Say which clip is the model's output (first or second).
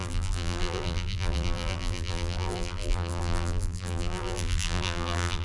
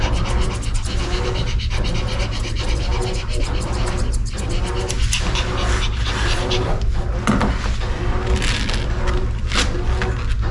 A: first